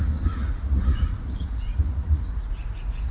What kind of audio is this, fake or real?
fake